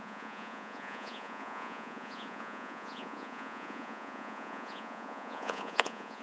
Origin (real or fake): fake